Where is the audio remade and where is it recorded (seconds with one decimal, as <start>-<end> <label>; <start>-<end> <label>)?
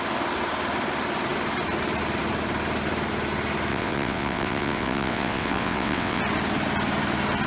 0.0-3.7 recorded; 3.7-6.2 remade; 6.2-7.5 recorded